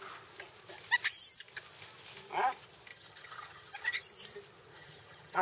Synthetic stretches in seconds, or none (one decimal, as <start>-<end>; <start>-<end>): 2.9-4.0; 4.7-5.4